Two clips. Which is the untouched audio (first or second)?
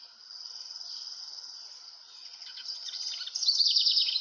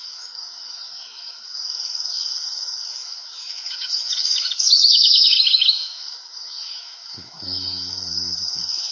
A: first